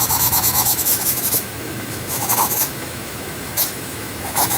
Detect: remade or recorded remade